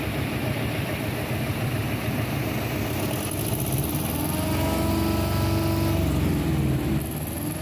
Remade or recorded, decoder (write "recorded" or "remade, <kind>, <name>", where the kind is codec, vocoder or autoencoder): recorded